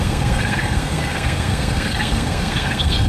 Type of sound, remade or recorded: remade